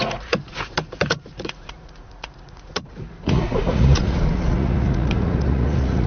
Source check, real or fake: fake